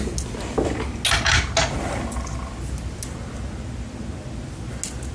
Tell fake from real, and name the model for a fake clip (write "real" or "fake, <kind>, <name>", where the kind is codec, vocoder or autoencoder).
real